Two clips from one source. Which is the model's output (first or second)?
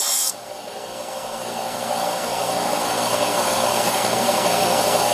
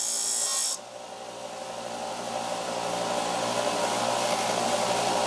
first